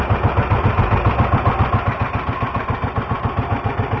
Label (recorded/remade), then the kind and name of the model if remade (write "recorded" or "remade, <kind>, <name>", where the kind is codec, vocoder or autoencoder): recorded